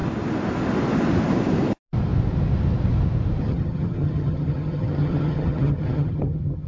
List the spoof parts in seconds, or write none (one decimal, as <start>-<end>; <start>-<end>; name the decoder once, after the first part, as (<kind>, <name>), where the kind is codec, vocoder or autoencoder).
3.4-6.7 (vocoder, HiFi-GAN)